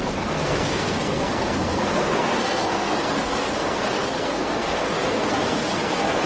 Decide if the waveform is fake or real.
fake